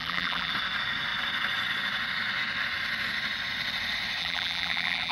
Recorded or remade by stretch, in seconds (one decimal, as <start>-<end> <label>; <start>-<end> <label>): 0.0-0.5 remade; 0.5-4.2 recorded; 4.2-5.1 remade